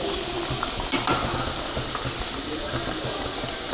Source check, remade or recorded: recorded